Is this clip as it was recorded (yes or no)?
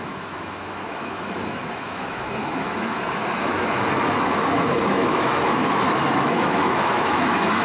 no